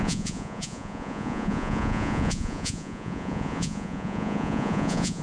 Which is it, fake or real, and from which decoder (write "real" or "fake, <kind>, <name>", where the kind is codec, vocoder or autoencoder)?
fake, vocoder, Vocos